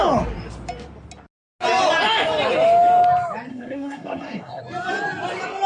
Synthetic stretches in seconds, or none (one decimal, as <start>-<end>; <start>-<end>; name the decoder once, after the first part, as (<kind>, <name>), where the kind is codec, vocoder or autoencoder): 3.5-4.6 (codec, SNAC)